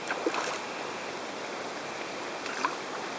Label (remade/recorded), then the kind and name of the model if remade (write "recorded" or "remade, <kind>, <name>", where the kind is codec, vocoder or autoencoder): recorded